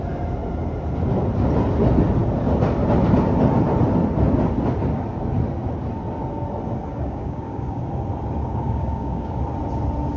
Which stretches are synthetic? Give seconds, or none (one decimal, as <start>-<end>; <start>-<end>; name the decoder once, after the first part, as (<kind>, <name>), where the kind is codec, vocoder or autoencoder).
6.9-7.8 (codec, DAC); 8.4-9.4